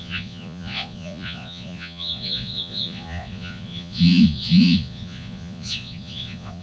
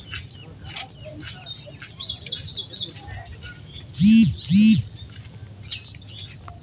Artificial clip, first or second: first